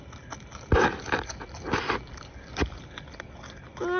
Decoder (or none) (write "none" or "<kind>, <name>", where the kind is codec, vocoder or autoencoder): none